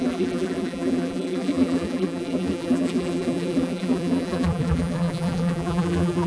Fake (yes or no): yes